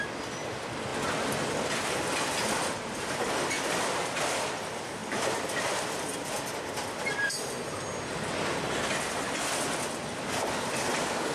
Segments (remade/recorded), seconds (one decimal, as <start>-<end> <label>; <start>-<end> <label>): 0.0-11.3 recorded